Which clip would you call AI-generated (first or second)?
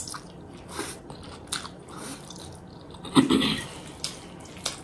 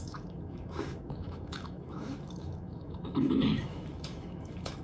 second